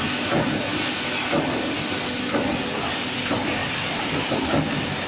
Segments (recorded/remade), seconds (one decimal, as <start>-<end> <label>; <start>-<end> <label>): 0.0-5.1 recorded